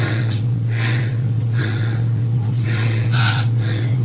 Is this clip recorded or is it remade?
remade